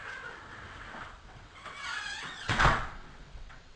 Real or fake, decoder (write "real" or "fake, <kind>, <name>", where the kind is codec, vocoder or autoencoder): fake, vocoder, WaveNeXt